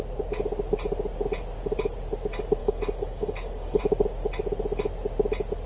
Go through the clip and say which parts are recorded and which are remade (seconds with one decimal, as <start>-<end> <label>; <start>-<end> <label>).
0.0-2.6 recorded; 2.6-3.8 remade; 3.8-5.7 recorded